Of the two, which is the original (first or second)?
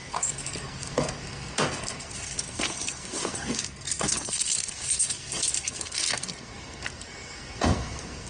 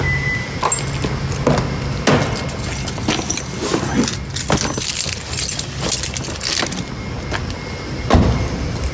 second